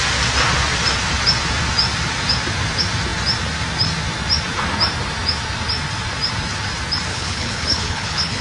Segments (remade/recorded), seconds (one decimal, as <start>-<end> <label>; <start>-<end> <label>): 0.0-7.1 recorded; 7.1-8.4 remade